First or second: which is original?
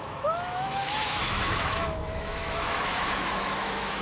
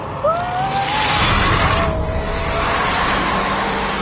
second